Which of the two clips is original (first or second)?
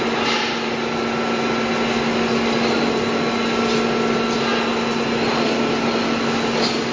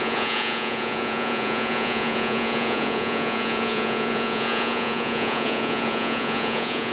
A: first